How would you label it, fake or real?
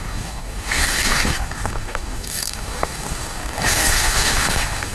fake